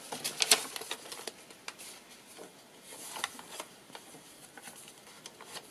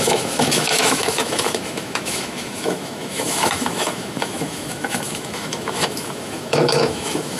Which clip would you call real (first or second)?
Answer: first